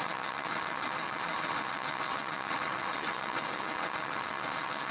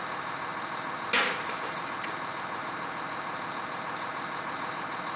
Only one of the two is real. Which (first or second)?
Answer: second